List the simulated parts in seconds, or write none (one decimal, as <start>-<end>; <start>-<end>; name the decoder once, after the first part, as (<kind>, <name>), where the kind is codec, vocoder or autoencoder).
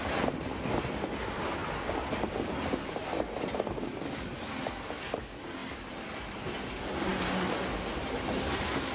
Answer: 5.6-6.2 (vocoder, BigVGAN v2)